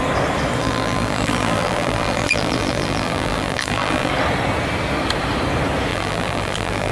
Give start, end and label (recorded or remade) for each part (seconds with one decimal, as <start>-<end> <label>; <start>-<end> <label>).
0.0-0.6 recorded; 0.6-4.1 remade; 4.1-5.9 recorded; 5.9-6.9 remade

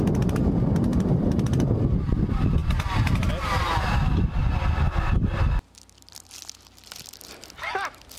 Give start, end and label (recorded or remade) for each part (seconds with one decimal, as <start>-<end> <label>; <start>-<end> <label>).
0.0-0.9 recorded; 0.9-1.8 remade; 1.8-8.2 recorded